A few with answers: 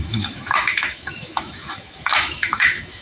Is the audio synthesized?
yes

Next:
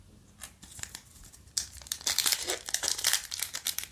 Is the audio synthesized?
no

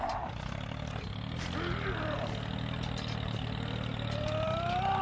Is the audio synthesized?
no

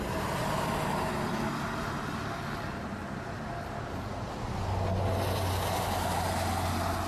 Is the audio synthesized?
no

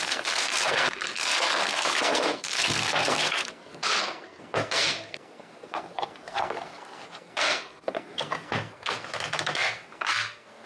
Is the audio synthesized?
yes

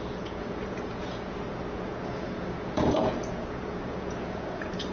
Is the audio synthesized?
yes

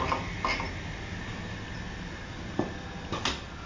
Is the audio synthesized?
no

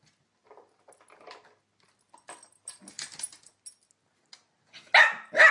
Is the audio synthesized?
no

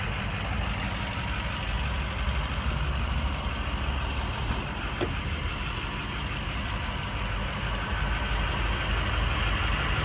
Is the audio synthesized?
no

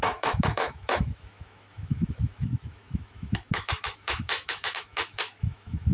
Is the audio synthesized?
yes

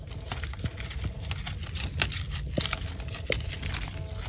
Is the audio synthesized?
no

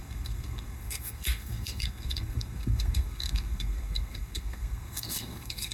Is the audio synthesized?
yes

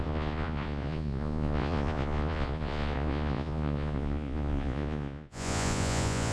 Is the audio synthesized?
yes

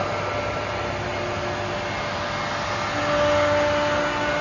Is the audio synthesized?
no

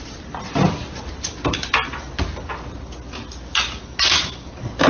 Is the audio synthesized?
no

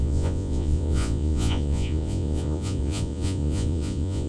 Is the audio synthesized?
yes